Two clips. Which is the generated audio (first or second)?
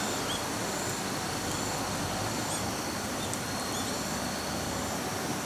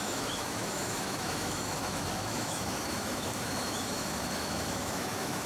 second